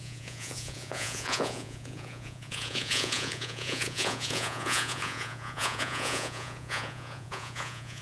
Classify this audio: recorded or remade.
remade